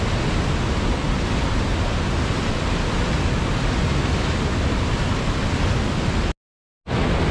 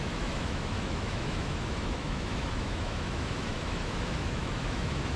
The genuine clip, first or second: first